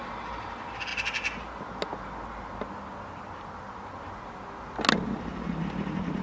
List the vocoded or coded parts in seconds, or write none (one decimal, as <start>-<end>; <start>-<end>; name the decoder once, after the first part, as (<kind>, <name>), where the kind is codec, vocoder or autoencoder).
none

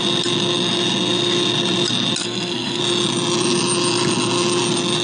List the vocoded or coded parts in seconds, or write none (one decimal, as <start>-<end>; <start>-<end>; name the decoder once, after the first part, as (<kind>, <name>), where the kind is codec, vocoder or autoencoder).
2.2-2.8 (codec, SNAC)

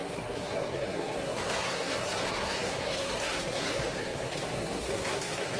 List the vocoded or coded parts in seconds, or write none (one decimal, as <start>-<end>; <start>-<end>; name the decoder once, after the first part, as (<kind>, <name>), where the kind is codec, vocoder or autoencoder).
0.0-5.6 (codec, SNAC)

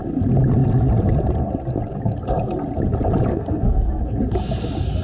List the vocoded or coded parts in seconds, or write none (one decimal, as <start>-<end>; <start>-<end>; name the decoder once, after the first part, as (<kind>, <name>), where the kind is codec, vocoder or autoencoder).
3.3-4.0 (codec, SNAC)